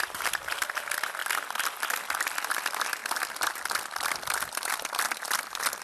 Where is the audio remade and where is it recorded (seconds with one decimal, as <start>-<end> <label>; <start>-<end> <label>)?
0.0-1.2 recorded; 1.2-1.8 remade; 1.8-5.8 recorded

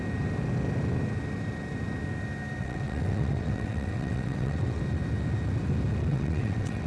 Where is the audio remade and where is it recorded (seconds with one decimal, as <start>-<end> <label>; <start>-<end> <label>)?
0.0-2.6 recorded; 2.6-4.8 remade; 4.8-6.1 recorded; 6.1-6.9 remade

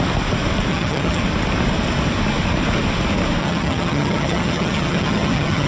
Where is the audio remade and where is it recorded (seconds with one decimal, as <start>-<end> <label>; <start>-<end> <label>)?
0.0-0.7 recorded; 0.7-1.2 remade; 1.2-3.4 recorded; 3.4-5.7 remade

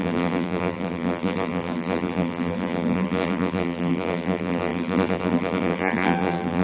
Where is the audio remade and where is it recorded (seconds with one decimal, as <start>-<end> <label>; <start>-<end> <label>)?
0.0-6.6 remade